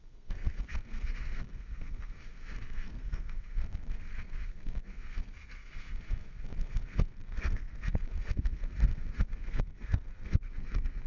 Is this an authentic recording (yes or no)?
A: no